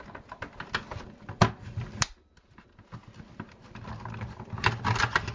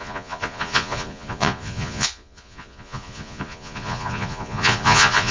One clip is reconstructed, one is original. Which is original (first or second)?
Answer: first